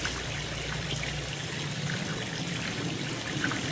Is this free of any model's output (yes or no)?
yes